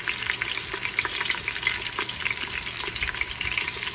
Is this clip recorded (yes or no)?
yes